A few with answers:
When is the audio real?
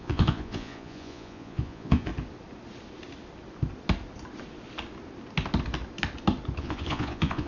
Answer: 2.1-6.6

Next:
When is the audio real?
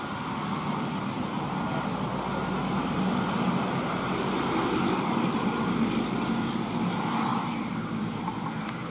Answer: 0.0-8.9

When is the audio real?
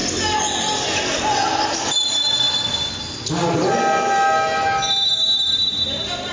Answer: 0.0-6.3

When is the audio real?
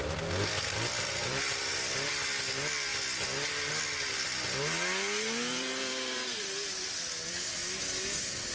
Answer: 2.9-3.7; 7.6-8.5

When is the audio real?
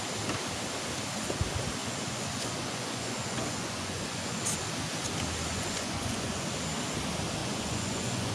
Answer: 0.0-1.8; 4.4-5.5; 6.5-7.4